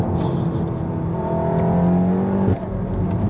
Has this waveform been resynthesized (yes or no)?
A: no